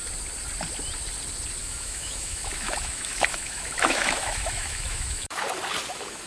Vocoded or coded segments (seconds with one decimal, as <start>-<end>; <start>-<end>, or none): 1.6-5.4